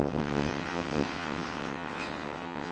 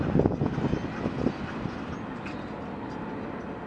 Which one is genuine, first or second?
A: second